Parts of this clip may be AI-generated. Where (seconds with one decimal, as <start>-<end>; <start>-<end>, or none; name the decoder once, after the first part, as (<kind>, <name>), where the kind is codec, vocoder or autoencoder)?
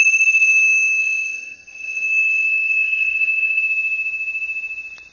1.0-3.6 (codec, SNAC)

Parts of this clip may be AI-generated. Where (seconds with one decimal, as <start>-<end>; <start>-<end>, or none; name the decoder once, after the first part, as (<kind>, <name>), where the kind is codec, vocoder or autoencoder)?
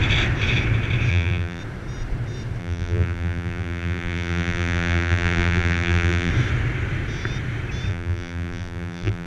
1.1-1.6 (vocoder, BigVGAN v2); 2.6-6.3; 7.9-9.3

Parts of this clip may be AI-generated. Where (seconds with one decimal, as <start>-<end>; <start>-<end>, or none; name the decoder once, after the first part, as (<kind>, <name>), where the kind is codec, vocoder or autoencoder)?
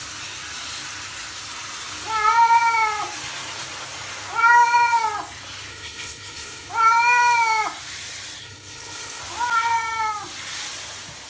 5.7-6.7 (codec, HILCodec); 8.4-9.2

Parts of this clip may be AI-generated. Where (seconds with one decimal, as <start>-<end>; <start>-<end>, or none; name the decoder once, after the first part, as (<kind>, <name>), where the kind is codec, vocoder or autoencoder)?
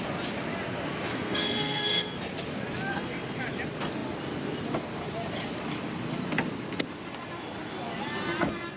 1.1-2.3 (codec, SNAC); 2.9-3.4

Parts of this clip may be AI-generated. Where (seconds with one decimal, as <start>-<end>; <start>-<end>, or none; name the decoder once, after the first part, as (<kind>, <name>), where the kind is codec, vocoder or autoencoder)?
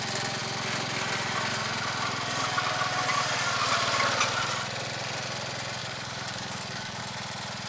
5.8-7.0 (codec, DAC)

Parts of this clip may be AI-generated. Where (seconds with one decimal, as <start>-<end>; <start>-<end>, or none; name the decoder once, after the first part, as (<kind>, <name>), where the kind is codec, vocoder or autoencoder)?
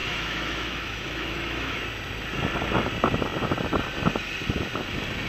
0.0-1.8 (autoencoder, DAC-VAE)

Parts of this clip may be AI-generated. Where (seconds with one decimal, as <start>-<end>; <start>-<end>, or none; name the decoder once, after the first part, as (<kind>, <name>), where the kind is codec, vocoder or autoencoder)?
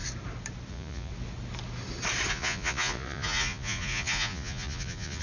0.7-1.1 (vocoder, Vocos); 2.3-5.2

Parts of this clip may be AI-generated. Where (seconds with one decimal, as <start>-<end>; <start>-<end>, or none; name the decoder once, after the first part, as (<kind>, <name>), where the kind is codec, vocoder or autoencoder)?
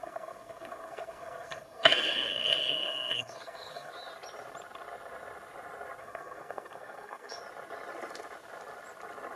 0.0-3.9 (codec, SNAC); 6.0-7.4